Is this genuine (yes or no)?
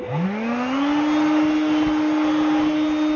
yes